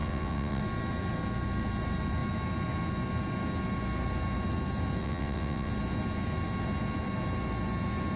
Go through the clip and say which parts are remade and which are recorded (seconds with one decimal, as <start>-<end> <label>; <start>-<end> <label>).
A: 0.0-0.6 remade; 0.6-5.0 recorded; 5.0-5.7 remade; 5.7-8.2 recorded